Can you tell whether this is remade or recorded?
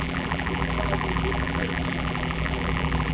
remade